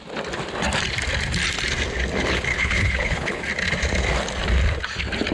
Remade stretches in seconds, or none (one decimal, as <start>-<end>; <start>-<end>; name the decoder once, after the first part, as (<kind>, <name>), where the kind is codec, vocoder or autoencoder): 2.5-3.4 (codec, HILCodec)